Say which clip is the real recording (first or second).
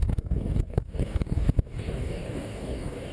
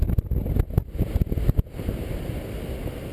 second